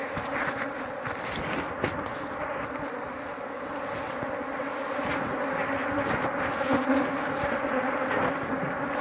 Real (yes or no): yes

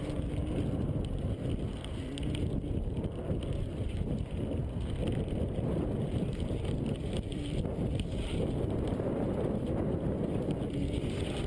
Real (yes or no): yes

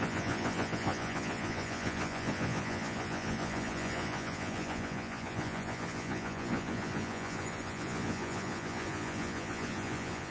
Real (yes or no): no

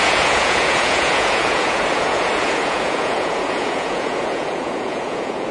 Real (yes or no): no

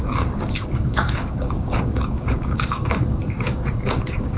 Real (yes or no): no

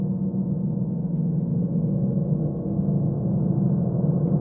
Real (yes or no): yes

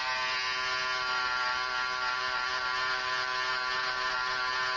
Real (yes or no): yes